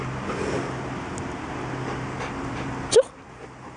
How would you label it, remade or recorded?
recorded